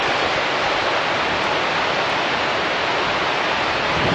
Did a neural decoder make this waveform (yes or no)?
no